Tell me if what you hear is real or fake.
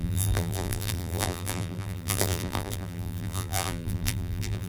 fake